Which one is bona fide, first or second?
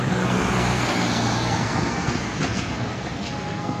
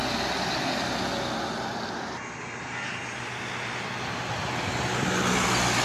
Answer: second